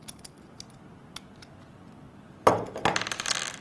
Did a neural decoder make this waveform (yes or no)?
no